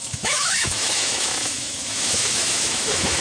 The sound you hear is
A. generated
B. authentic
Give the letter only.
A